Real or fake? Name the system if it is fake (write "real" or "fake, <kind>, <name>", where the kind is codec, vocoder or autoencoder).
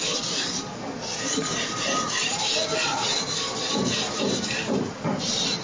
real